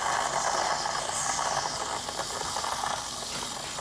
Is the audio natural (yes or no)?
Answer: yes